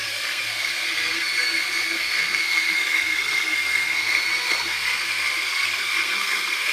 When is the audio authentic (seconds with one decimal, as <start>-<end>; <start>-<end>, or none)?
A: none